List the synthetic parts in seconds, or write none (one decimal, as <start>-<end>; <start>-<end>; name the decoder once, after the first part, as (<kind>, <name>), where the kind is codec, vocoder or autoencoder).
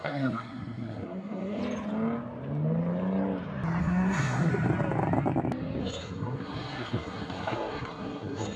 0.0-1.6 (codec, SNAC); 3.8-4.5; 5.8-8.6